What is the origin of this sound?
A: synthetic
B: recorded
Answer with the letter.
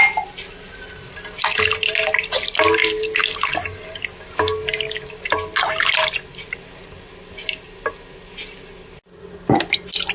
B